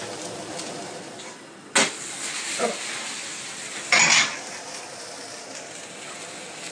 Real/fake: real